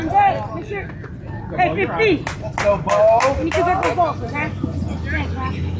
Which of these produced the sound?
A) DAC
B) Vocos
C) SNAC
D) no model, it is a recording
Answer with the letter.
D